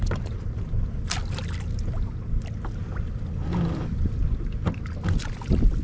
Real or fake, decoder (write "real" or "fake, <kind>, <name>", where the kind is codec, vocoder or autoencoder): real